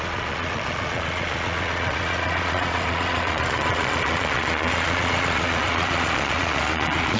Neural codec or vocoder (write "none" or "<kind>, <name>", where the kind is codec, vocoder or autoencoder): vocoder, Vocos